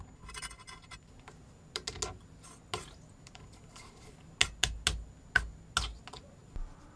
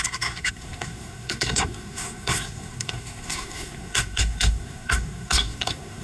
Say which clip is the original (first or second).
first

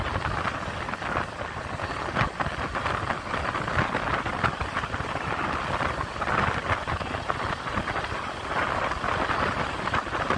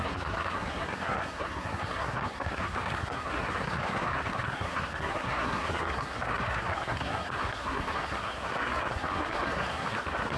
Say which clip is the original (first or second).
first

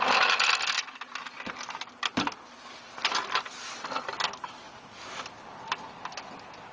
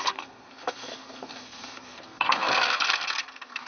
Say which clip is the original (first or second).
first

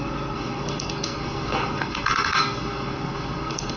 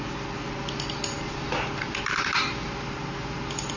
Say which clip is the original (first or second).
second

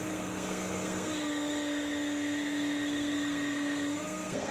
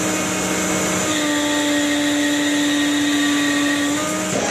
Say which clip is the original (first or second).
second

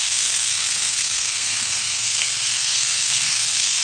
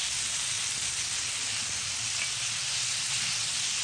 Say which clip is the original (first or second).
second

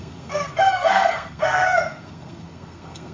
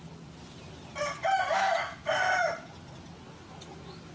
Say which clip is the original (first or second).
second